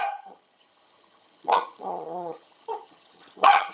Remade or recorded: remade